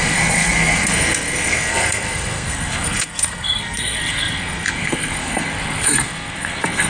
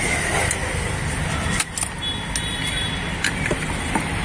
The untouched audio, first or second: second